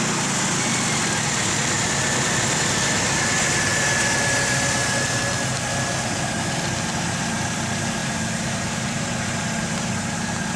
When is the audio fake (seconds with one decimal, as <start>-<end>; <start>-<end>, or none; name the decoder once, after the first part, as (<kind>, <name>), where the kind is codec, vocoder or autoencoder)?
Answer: 8.0-9.9 (vocoder, BigVGAN v2)